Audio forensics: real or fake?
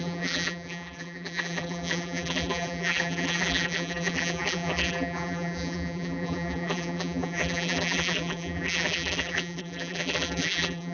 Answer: fake